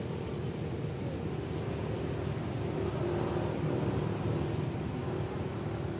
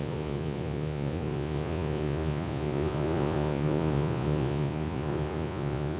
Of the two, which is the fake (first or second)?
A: second